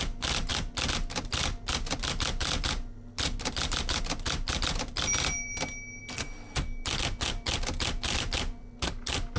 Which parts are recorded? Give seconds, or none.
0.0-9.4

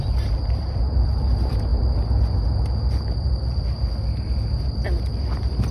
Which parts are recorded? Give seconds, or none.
0.0-5.7

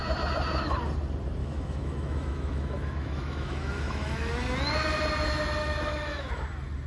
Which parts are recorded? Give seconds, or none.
0.0-1.4; 4.3-5.6; 6.3-6.9

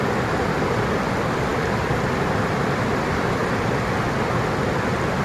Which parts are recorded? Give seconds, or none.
0.0-5.2

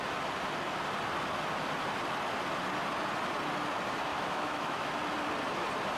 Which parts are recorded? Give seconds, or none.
0.0-4.1; 4.9-6.0

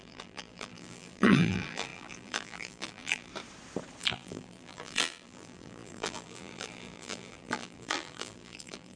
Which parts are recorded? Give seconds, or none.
3.3-4.0